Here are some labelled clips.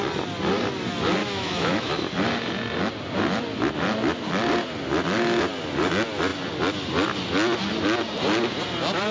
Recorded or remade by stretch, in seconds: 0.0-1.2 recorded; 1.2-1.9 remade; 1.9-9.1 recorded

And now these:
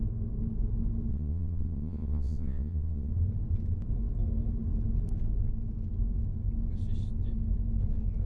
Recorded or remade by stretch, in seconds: 0.0-1.1 recorded; 1.1-3.1 remade; 3.1-8.2 recorded

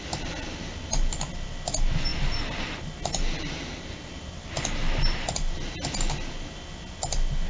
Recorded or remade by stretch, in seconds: 0.0-7.5 recorded

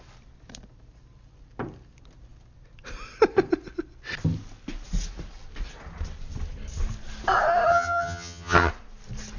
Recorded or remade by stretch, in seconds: 0.0-7.7 recorded; 7.7-8.7 remade; 8.7-9.4 recorded

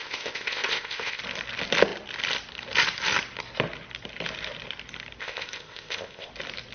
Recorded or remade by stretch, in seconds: 0.0-1.2 remade; 1.2-5.2 recorded; 5.2-6.3 remade; 6.3-6.7 recorded

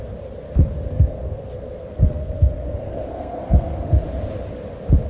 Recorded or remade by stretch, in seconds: 0.0-0.9 recorded; 0.9-4.0 remade; 4.0-5.1 recorded

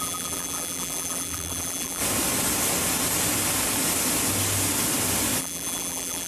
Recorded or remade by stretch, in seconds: 0.0-2.0 remade; 2.0-5.4 recorded; 5.4-6.3 remade

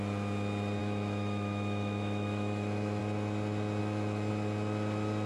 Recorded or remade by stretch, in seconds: 0.0-0.8 recorded; 0.8-3.0 remade; 3.0-3.8 recorded; 3.8-4.3 remade; 4.3-5.3 recorded